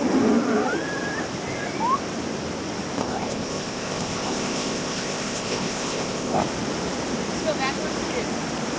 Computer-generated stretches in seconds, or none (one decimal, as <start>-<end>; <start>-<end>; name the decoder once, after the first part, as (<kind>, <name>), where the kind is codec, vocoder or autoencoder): 3.0-6.4 (codec, ZipCodec)